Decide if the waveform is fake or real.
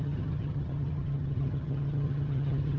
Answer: fake